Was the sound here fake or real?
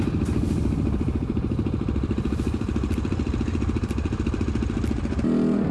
real